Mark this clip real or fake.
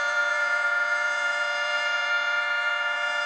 fake